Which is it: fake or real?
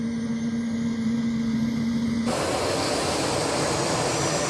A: real